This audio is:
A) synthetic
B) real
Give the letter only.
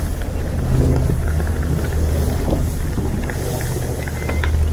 B